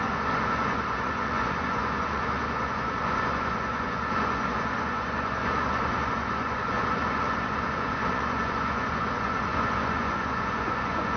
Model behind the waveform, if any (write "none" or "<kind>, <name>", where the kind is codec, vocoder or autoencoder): vocoder, Vocos